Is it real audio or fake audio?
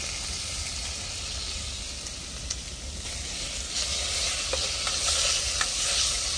real